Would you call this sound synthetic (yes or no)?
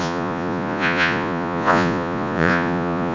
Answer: yes